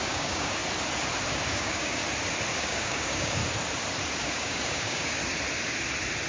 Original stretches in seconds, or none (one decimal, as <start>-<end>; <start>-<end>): 0.6-1.5; 2.0-2.6; 3.4-4.2; 5.2-6.3